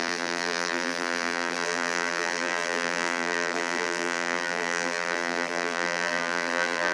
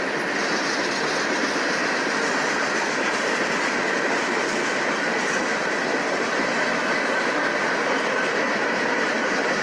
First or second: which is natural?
second